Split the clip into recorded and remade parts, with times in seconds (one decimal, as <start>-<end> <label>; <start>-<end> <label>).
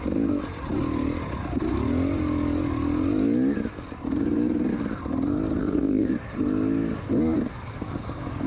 0.0-5.6 recorded; 5.6-6.1 remade; 6.1-8.5 recorded